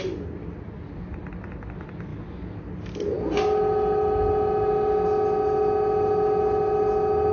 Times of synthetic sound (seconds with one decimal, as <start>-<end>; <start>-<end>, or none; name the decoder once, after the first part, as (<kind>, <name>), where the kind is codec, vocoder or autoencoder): none